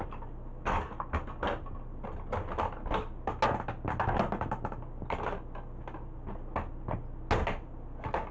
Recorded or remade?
recorded